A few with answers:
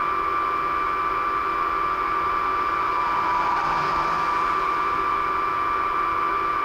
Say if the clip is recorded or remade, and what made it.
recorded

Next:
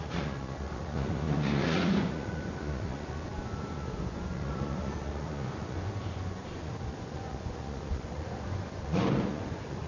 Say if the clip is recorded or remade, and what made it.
remade, vocoder, Vocos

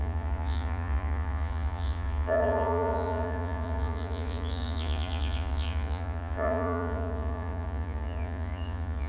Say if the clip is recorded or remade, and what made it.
remade, vocoder, Vocos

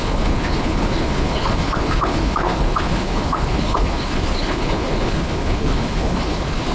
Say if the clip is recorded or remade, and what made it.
remade, codec, HILCodec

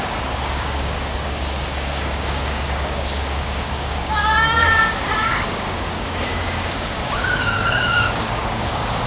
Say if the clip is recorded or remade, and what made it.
remade, codec, DAC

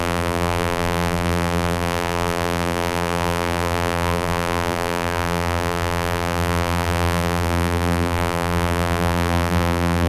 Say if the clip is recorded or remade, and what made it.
remade, vocoder, BigVGAN v2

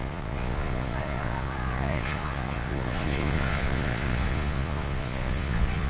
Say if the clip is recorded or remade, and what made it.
remade, vocoder, Vocos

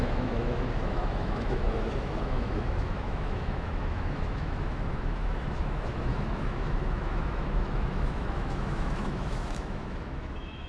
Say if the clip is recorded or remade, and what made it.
remade, autoencoder, DAC-VAE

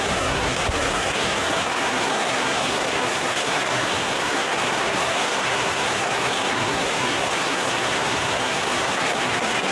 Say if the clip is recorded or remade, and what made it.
remade, codec, SNAC